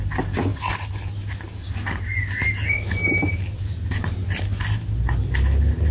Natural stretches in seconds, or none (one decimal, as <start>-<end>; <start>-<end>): 0.0-5.9